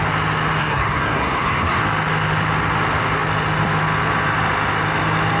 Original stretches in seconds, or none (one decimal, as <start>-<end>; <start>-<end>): 0.0-0.6; 1.8-5.4